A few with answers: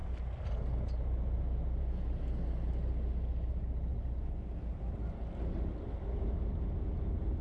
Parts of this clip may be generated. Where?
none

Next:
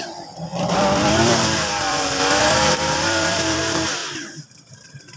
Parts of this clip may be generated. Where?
0.5-3.6 (vocoder, BigVGAN v2)

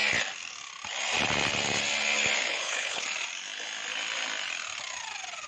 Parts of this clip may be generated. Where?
2.5-3.0 (codec, HILCodec)

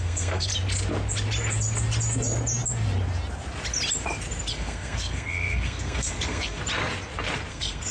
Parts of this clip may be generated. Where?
0.0-0.5 (codec, SNAC); 4.5-6.6; 7.5-7.9

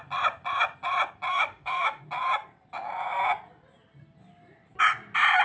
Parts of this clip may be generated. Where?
1.3-2.0 (autoencoder, DAC-VAE)

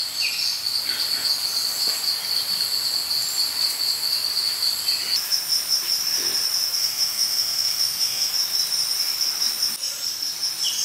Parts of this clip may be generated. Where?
6.8-8.3 (autoencoder, DAC-VAE)